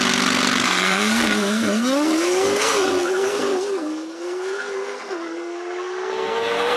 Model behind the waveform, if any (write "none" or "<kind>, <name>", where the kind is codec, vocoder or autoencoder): codec, SNAC